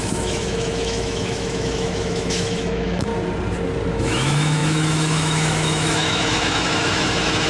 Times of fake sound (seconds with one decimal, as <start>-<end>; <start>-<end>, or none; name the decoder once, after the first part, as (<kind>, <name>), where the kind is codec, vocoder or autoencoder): 0.0-3.1 (autoencoder, DAC-VAE); 3.9-7.5